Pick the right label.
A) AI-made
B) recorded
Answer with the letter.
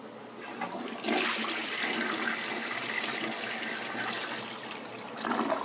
B